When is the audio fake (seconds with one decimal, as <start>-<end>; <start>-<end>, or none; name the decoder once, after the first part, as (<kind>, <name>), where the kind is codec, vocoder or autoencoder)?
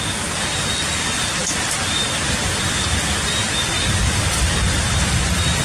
none